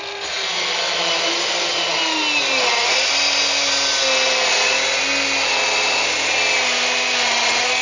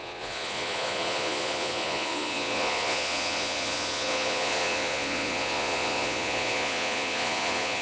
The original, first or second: first